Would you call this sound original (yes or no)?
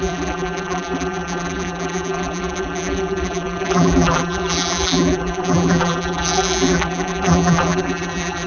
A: no